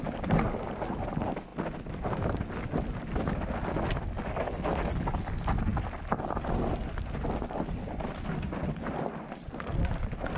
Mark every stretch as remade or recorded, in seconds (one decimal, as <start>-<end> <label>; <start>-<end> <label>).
0.0-10.4 recorded